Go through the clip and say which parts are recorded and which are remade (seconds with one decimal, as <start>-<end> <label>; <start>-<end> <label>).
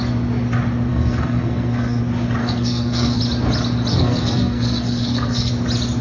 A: 0.0-0.9 recorded; 0.9-2.0 remade; 2.0-2.4 recorded; 2.4-3.2 remade; 3.2-3.9 recorded; 3.9-5.5 remade; 5.5-6.0 recorded